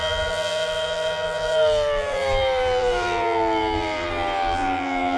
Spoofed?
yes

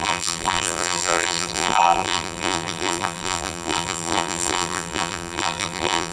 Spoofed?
yes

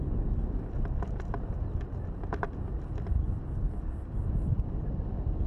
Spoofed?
no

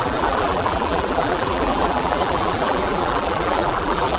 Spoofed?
yes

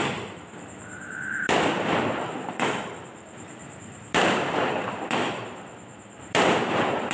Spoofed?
yes